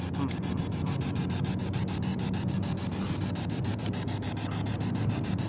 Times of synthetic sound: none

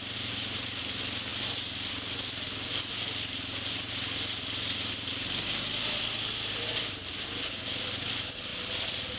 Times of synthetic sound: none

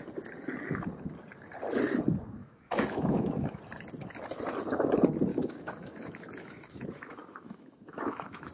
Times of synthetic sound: 2.4-3.6 (autoencoder, DAC-VAE); 5.3-8.5

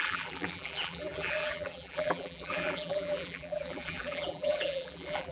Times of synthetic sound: 0.0-5.3 (vocoder, BigVGAN v2)

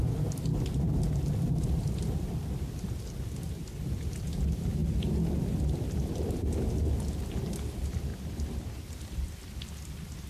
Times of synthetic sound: none